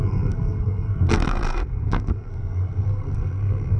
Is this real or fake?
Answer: fake